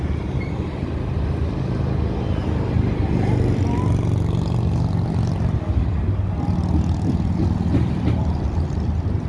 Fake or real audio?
real